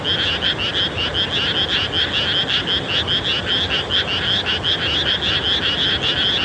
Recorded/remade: recorded